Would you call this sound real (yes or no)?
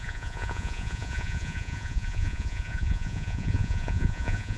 no